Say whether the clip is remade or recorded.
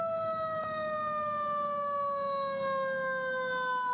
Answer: recorded